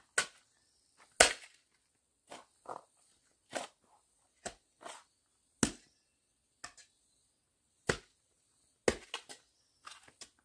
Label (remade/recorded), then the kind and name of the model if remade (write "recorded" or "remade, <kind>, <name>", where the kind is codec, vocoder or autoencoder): recorded